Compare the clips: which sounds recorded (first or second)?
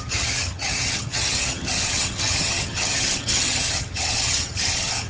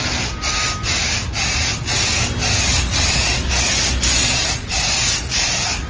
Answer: second